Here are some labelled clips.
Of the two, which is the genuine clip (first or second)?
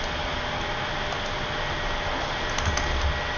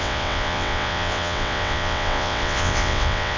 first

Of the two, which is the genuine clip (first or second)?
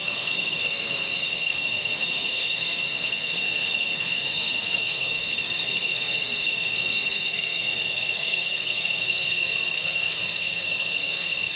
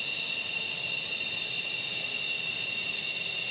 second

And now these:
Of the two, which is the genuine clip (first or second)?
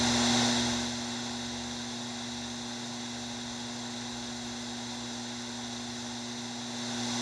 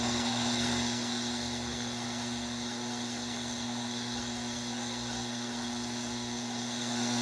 first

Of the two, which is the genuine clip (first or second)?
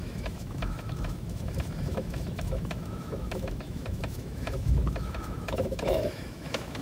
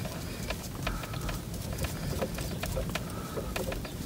second